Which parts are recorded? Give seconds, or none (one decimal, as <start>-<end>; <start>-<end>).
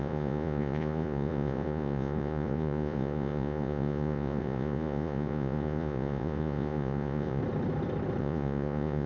7.4-8.2